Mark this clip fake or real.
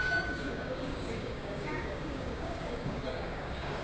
fake